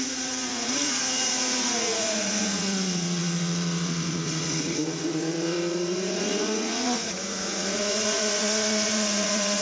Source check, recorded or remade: remade